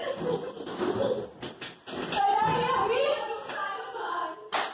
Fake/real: real